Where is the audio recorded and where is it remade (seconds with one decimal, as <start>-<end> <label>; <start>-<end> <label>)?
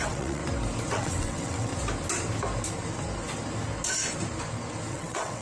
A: 0.0-0.4 remade; 0.4-0.9 recorded; 0.9-1.7 remade; 1.7-4.9 recorded; 4.9-5.4 remade